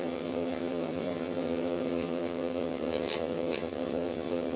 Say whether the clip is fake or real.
fake